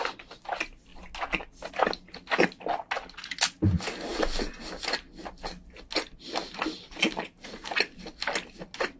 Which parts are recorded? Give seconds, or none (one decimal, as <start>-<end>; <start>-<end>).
0.0-9.0

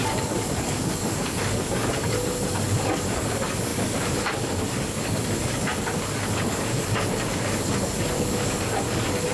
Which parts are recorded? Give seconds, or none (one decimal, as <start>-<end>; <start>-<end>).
none